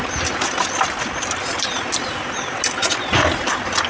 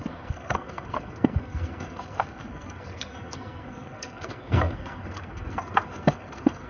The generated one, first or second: second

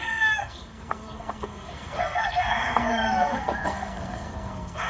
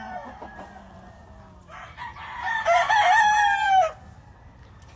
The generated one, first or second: first